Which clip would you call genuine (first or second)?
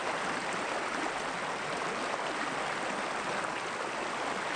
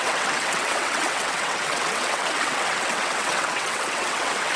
first